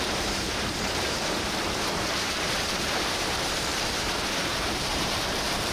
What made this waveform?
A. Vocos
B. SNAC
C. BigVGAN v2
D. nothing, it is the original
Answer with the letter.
C